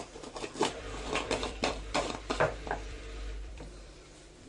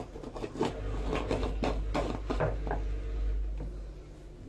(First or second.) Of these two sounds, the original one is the second